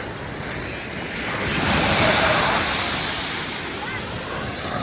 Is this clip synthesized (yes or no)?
no